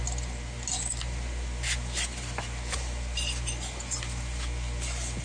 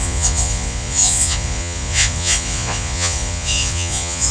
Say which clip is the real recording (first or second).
first